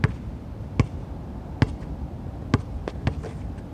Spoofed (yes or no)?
no